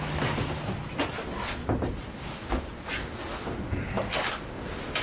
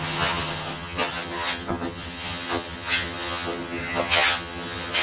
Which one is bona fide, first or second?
first